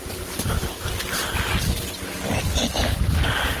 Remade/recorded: recorded